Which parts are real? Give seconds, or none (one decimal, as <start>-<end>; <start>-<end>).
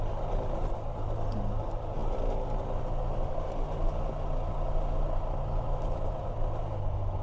0.0-7.2